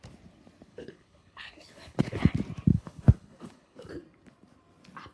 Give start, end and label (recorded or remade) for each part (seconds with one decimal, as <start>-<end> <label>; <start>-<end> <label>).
0.0-0.7 recorded; 0.7-2.2 remade; 2.2-2.7 recorded; 2.7-3.9 remade; 3.9-5.1 recorded